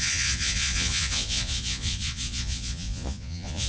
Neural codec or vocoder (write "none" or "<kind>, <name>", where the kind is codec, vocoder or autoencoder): vocoder, Vocos